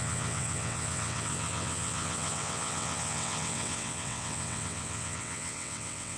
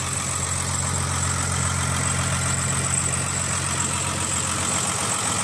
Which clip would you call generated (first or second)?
first